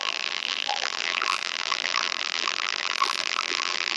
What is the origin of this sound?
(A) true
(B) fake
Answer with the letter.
B